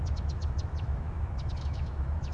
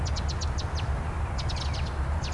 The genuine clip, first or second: second